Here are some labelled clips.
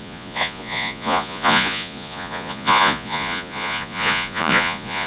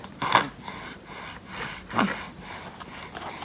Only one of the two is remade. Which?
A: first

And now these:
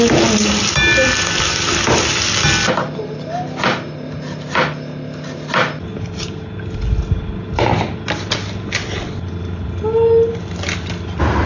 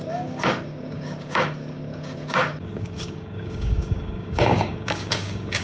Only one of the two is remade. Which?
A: second